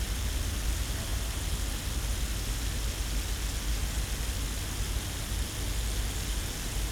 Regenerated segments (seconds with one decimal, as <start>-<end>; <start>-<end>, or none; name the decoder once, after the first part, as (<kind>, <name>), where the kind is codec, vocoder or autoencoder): 1.1-1.7 (vocoder, BigVGAN v2)